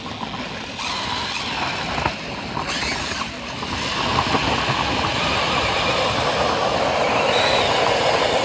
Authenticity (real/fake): real